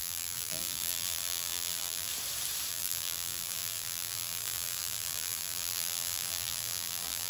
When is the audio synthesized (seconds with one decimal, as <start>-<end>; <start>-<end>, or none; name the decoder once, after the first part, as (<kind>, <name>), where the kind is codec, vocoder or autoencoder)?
0.0-2.1 (vocoder, BigVGAN v2); 2.7-7.3